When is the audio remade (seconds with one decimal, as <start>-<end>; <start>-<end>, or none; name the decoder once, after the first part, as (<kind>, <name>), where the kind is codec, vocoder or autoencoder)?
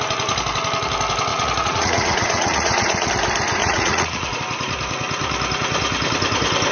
1.3-3.1 (vocoder, Vocos); 3.6-4.4